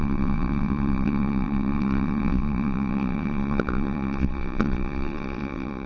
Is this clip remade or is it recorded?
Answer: remade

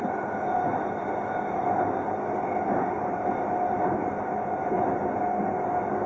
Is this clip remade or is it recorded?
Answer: recorded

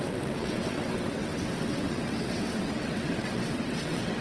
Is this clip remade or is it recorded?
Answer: remade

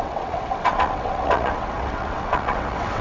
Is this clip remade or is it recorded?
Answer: remade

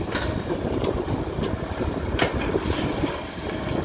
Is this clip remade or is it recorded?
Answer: recorded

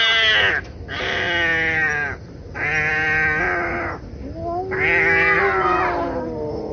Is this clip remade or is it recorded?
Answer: recorded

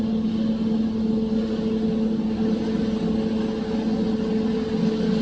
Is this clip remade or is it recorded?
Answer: recorded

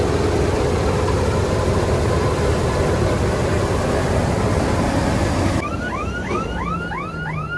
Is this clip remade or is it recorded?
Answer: recorded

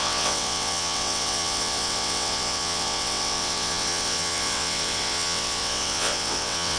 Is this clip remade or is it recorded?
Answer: remade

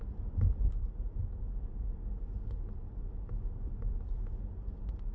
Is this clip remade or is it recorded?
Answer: recorded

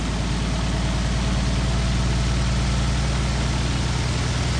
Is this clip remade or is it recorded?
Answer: recorded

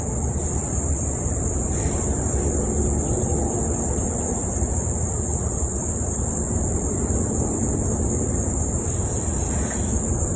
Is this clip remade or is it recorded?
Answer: recorded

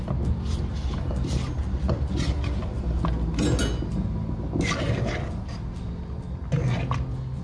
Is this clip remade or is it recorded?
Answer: recorded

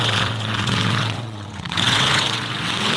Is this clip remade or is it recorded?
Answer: remade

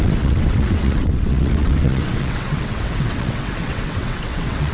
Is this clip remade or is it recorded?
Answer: remade